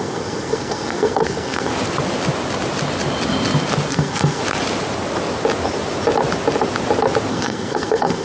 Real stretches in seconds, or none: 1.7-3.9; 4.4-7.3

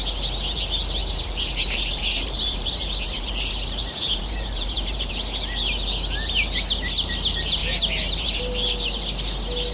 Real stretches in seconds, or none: 0.0-1.0; 5.1-9.7

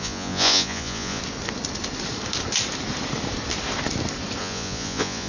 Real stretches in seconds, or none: 1.2-4.4

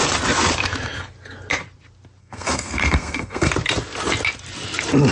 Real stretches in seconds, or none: 0.0-2.2; 3.5-5.1